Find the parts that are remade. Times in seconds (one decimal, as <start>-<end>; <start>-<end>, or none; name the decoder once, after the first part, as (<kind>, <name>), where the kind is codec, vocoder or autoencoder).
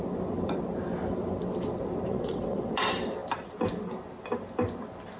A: 2.1-2.7 (vocoder, WaveNeXt)